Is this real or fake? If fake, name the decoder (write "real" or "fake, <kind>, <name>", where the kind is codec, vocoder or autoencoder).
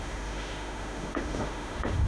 fake, autoencoder, DAC-VAE